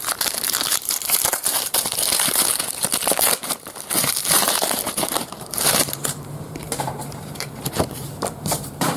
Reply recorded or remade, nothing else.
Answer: remade